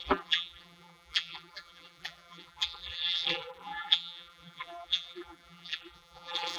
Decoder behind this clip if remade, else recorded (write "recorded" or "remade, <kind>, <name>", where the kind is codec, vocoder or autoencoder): remade, vocoder, BigVGAN v2